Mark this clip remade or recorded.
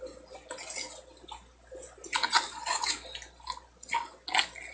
recorded